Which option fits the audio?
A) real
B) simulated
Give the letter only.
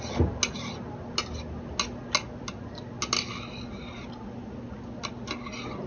A